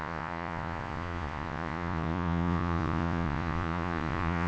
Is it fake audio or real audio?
fake